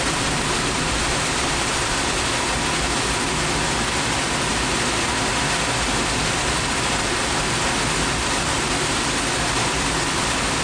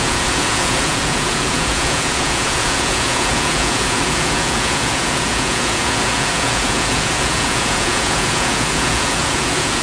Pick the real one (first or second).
first